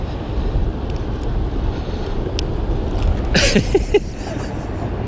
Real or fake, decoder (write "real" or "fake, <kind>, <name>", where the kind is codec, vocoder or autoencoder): real